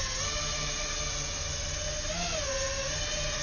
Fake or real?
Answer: real